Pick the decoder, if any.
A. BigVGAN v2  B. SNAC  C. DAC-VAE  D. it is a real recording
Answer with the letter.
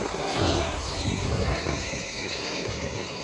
B